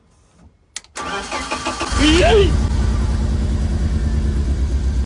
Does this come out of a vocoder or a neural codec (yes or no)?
no